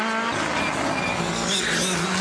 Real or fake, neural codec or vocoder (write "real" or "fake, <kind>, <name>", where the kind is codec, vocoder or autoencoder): real